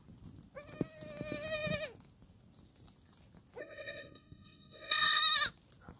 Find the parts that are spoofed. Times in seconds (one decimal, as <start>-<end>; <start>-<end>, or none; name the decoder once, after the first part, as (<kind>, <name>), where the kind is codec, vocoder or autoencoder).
3.6-5.2 (codec, SNAC)